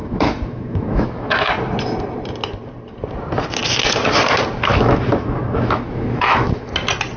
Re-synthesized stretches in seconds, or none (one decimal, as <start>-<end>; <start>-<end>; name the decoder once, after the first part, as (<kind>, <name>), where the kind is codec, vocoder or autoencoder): 0.0-1.5 (autoencoder, DAC-VAE); 4.7-6.7